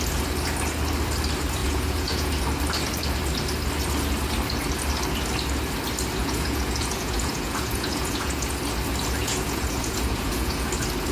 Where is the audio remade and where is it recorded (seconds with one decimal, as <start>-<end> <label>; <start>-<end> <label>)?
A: 0.0-1.6 recorded; 1.6-2.3 remade; 2.3-6.2 recorded; 6.2-8.6 remade; 8.6-9.2 recorded; 9.2-10.7 remade; 10.7-11.1 recorded